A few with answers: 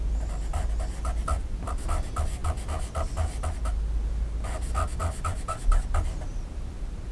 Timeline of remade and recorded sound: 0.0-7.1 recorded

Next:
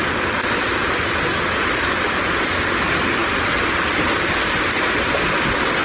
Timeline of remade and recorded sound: 0.0-5.8 recorded

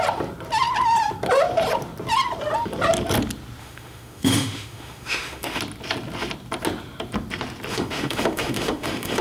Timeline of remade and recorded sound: 0.0-3.6 recorded; 3.6-5.6 remade; 5.6-7.7 recorded; 7.7-9.2 remade

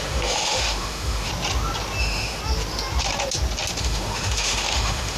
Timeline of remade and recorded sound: 0.0-1.3 remade; 1.3-2.0 recorded; 2.0-2.4 remade; 2.4-3.8 recorded; 3.8-5.2 remade